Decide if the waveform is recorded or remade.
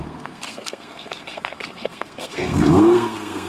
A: remade